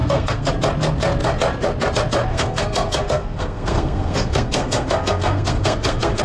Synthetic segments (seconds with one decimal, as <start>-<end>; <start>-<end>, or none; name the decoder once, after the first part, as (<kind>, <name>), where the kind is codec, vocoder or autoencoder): 0.0-0.5 (codec, SNAC); 2.3-6.2